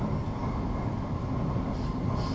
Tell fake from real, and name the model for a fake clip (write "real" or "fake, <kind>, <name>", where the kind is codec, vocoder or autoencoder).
real